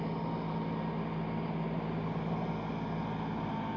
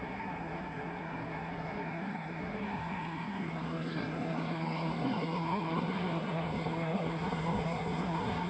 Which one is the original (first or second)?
first